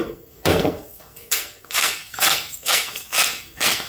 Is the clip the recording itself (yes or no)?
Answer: no